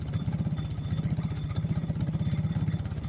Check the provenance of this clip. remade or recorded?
recorded